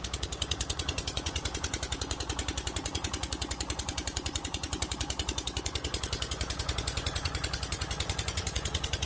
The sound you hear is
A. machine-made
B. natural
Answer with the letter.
A